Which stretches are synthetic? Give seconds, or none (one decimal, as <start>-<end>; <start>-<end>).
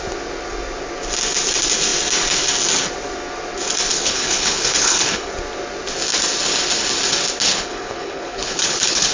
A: 3.9-5.3; 7.5-9.1